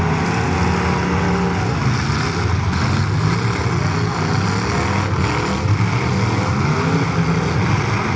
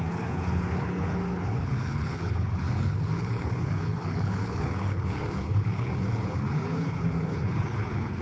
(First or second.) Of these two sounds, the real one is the first